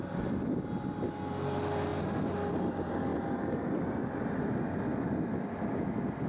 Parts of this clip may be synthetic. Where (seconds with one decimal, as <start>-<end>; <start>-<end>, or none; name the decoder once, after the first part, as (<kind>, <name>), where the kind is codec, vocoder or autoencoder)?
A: none